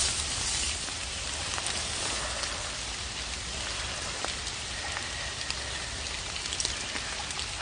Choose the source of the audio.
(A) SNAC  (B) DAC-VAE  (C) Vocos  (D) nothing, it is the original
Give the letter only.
D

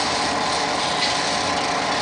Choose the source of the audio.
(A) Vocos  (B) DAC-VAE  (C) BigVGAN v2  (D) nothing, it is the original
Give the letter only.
D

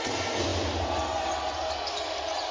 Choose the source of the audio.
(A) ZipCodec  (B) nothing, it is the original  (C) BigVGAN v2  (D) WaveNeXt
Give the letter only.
B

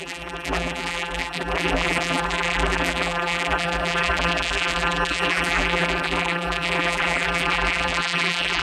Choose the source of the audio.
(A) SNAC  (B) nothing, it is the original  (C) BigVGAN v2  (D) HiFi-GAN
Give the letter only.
C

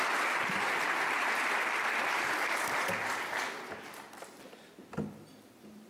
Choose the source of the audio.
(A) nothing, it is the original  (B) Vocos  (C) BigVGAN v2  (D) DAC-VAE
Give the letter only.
C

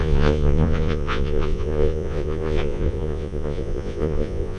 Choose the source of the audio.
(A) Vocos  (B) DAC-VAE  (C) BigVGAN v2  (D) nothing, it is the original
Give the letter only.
A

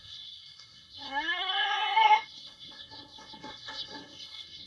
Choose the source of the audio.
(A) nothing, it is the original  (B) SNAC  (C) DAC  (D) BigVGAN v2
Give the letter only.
B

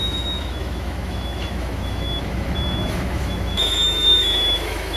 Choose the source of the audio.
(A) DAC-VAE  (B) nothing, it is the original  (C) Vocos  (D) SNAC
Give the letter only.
A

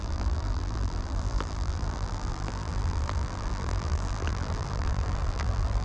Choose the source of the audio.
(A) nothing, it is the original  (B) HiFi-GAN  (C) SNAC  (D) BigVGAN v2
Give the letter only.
D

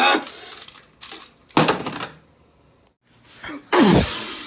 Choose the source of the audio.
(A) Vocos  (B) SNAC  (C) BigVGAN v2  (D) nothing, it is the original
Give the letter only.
D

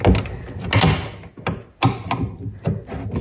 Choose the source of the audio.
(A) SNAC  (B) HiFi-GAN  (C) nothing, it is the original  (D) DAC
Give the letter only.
C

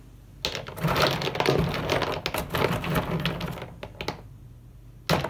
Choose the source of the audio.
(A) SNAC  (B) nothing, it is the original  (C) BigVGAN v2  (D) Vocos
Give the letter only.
B